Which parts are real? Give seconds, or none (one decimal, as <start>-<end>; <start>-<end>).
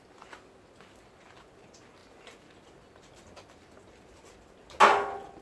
0.0-5.4